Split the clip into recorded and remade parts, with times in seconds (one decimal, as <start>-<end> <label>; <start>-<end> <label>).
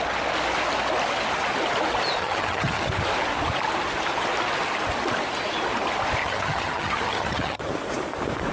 0.0-2.2 recorded; 2.2-2.9 remade; 2.9-6.2 recorded; 6.2-7.7 remade; 7.7-8.5 recorded